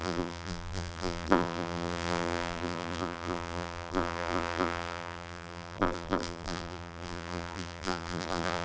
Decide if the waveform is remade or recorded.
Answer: remade